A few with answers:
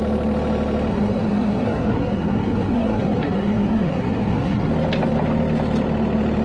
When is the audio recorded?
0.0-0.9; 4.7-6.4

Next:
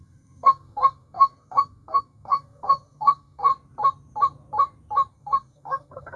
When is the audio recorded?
3.5-5.1

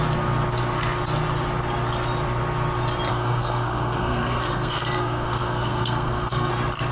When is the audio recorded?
0.0-3.1; 6.5-6.9

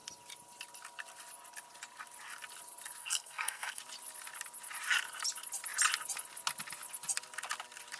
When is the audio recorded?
0.0-3.0; 3.8-8.0

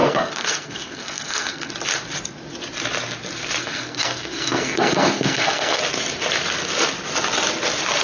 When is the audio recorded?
1.7-3.6; 5.8-8.0

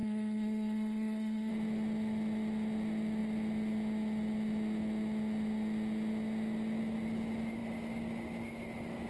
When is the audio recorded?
1.5-9.1

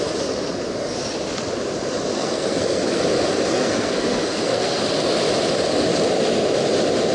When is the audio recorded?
0.0-2.1; 3.0-3.5; 4.8-7.1